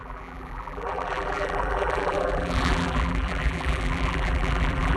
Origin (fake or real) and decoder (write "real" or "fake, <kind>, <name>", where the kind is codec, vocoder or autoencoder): fake, vocoder, BigVGAN v2